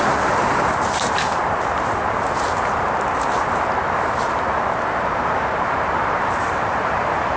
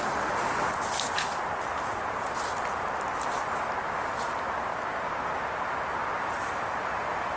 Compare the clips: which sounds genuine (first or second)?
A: second